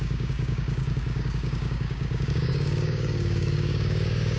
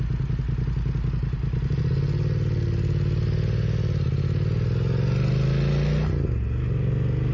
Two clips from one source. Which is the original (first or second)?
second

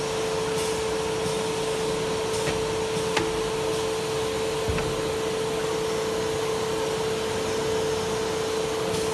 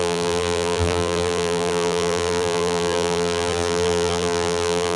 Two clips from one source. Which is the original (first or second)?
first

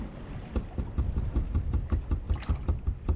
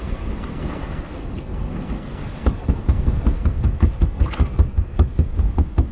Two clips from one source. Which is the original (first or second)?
first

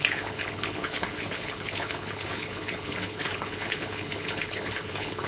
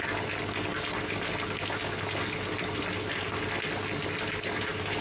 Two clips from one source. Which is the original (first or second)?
second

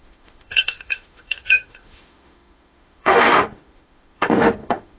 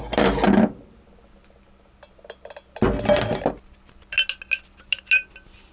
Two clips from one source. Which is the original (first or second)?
second